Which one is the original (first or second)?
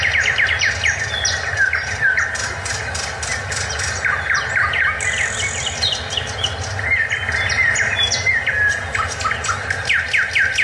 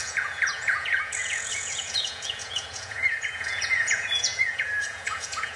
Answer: first